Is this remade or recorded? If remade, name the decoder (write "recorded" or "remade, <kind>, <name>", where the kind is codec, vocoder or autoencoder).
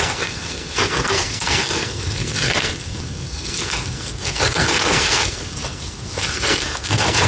remade, codec, SNAC